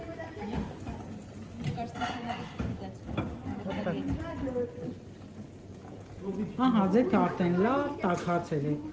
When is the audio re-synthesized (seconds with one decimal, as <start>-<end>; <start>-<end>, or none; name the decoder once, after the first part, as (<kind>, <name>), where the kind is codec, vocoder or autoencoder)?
5.7-6.3 (vocoder, Vocos)